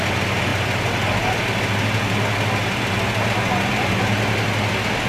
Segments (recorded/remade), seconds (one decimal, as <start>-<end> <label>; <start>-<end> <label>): 0.0-5.1 recorded